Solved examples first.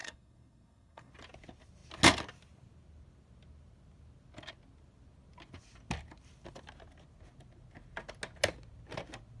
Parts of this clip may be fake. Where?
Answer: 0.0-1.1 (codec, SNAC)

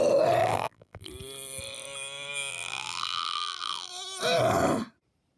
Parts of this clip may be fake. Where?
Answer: 0.4-1.1 (vocoder, BigVGAN v2); 2.5-3.9

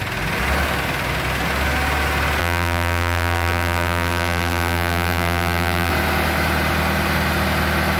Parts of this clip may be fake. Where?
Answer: 2.4-5.9 (vocoder, BigVGAN v2)